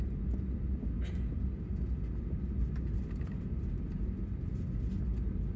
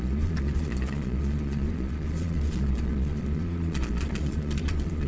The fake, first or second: second